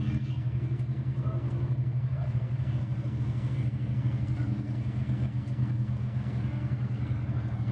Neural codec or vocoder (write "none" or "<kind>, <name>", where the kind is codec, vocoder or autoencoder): codec, SNAC